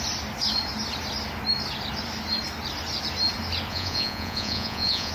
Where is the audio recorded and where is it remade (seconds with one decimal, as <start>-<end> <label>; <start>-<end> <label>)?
0.0-3.7 recorded; 3.7-5.1 remade